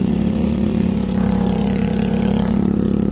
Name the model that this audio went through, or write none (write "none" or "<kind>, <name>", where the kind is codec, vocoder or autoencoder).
vocoder, Vocos